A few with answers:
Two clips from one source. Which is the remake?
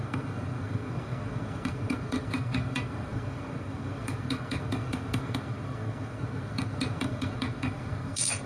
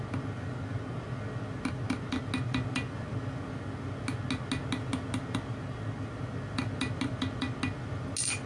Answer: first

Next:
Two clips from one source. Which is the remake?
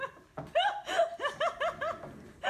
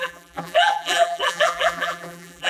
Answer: second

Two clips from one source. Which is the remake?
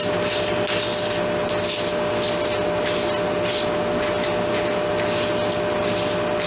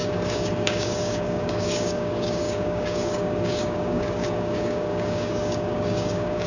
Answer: second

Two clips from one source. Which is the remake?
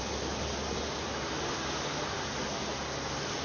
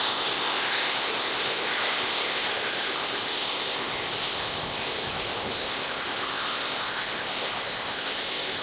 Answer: second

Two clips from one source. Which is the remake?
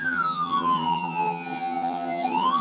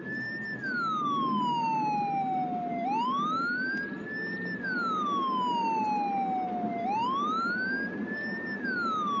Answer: first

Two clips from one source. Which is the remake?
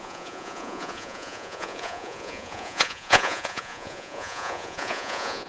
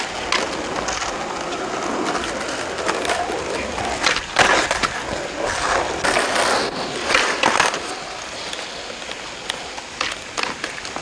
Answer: first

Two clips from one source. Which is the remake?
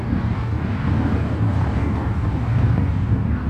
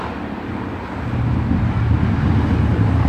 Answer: first